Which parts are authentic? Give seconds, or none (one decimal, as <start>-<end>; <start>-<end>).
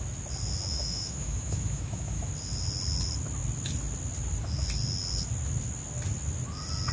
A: 0.0-0.7; 2.3-6.9